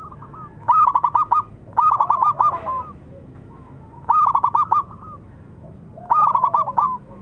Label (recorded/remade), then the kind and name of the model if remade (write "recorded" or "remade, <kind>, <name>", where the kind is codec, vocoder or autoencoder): remade, autoencoder, DAC-VAE